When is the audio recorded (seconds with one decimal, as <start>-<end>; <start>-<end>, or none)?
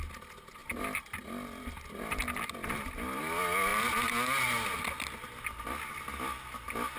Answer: 0.0-7.0